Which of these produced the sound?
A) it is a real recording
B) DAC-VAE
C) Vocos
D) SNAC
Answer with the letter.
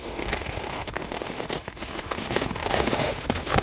B